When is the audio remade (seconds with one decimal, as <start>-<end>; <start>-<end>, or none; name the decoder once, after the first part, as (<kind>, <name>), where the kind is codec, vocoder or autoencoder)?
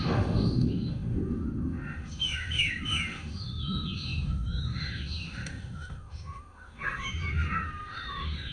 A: 0.0-8.5 (autoencoder, DAC-VAE)